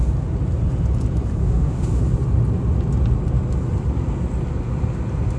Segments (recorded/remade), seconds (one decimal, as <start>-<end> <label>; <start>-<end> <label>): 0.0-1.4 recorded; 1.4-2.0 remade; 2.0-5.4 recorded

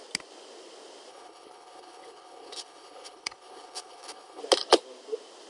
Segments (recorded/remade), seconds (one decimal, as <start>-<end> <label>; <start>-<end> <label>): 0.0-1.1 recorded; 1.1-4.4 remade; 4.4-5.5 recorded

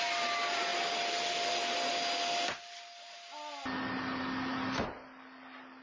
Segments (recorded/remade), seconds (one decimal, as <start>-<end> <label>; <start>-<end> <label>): 0.0-5.8 recorded